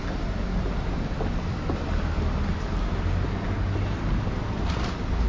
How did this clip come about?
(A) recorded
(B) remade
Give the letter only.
A